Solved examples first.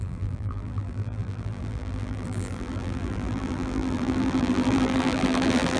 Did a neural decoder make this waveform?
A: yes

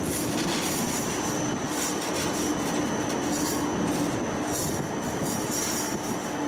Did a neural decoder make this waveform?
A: no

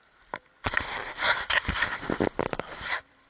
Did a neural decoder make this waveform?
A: yes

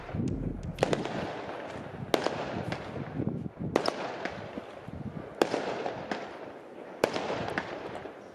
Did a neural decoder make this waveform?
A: no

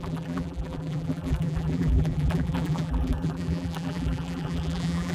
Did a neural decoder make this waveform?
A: yes